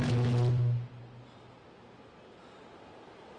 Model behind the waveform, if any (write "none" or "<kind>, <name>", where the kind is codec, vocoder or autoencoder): none